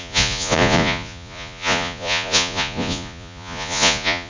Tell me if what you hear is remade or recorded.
remade